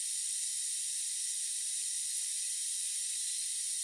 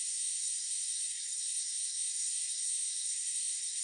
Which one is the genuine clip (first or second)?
first